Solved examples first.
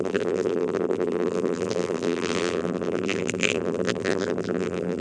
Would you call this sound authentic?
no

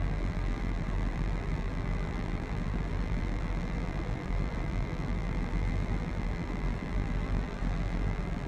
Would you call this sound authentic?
no